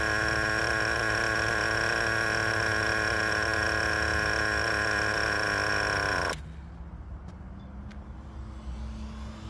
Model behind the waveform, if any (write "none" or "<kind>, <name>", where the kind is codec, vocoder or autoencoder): none